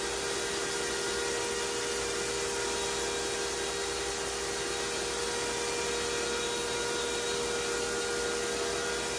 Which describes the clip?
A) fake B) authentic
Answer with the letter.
B